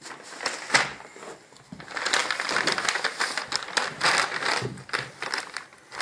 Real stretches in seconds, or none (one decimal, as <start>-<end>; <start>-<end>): 0.0-2.2